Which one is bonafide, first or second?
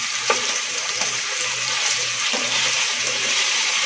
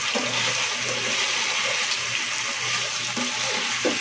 second